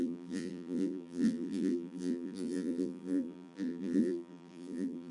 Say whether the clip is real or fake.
fake